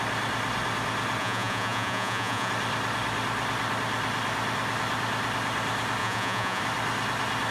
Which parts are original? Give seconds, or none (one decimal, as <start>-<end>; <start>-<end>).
0.0-1.2; 2.5-6.0; 6.6-7.5